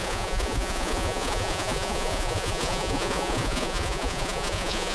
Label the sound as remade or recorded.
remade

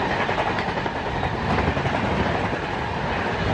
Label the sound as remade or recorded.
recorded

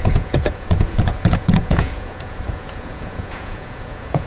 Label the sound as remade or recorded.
remade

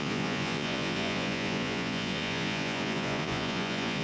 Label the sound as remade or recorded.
remade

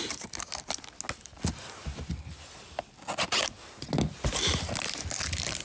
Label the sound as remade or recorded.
recorded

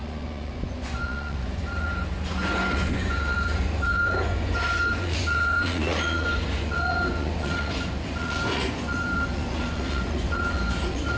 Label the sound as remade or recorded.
remade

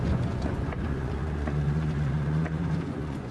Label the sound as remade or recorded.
remade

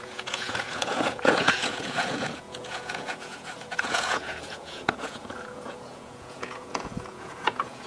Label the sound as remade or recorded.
remade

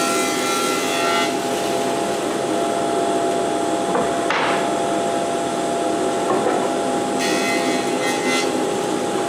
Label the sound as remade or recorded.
recorded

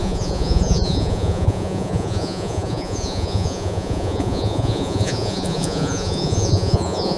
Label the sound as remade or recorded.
remade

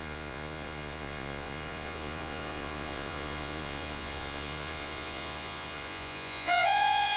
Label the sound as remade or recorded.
remade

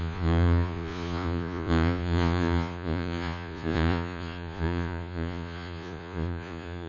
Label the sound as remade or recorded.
remade